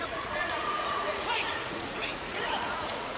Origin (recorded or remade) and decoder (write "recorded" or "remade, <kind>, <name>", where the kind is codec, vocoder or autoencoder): remade, vocoder, Vocos